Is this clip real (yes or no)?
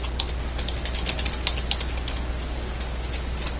yes